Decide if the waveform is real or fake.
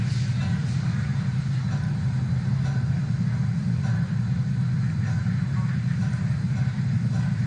real